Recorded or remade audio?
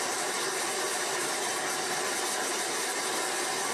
remade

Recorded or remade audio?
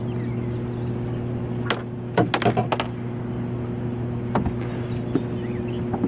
recorded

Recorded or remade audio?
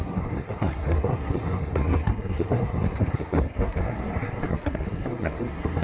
remade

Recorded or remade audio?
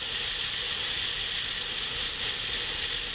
recorded